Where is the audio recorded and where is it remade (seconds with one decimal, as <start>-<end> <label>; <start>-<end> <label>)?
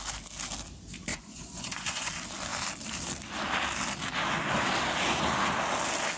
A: 0.0-1.1 recorded; 1.1-2.1 remade; 2.1-6.2 recorded